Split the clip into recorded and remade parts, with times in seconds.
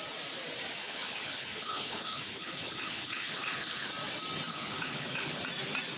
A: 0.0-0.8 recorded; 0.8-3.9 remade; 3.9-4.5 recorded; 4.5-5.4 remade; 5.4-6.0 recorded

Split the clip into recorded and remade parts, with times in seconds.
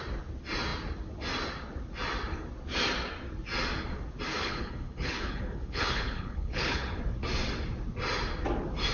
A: 0.0-4.3 recorded; 4.3-7.0 remade; 7.0-8.9 recorded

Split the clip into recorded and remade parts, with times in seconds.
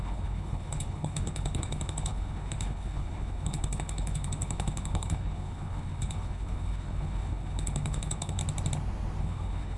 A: 0.0-8.4 remade; 8.4-9.2 recorded; 9.2-9.8 remade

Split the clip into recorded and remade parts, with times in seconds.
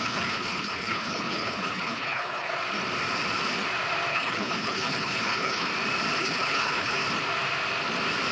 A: 0.0-2.5 remade; 2.5-4.1 recorded; 4.1-5.7 remade; 5.7-6.2 recorded; 6.2-7.0 remade; 7.0-8.3 recorded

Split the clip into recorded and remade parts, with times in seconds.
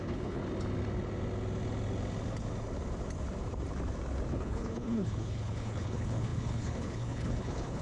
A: 0.0-0.4 remade; 0.4-4.3 recorded; 4.3-7.8 remade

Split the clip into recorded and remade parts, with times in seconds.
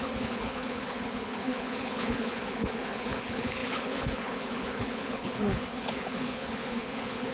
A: 0.0-7.3 remade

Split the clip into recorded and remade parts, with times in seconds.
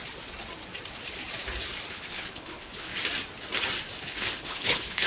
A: 0.0-1.9 recorded; 1.9-2.9 remade; 2.9-4.1 recorded; 4.1-5.1 remade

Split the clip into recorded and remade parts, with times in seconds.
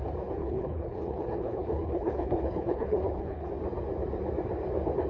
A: 0.0-0.4 recorded; 0.4-3.5 remade; 3.5-5.1 recorded